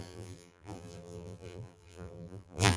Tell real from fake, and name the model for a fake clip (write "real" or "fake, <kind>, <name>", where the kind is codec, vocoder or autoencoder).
fake, vocoder, BigVGAN v2